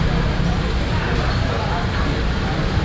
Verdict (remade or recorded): recorded